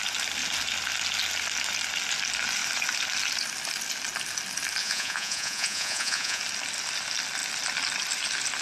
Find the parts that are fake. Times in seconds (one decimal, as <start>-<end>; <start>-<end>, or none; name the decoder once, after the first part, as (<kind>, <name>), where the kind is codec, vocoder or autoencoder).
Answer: 4.8-6.4 (vocoder, Vocos)